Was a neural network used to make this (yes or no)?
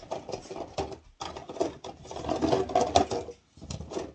no